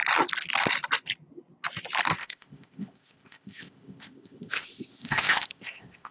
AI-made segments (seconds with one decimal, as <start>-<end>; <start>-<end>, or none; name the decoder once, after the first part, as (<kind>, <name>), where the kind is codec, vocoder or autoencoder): 2.2-6.1 (codec, ZipCodec)